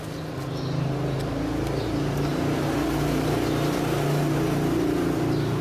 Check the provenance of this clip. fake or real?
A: real